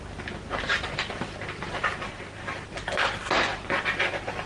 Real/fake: real